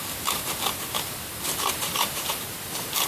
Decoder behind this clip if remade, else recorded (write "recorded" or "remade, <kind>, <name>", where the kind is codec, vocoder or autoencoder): remade, vocoder, BigVGAN v2